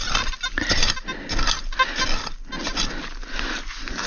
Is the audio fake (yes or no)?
no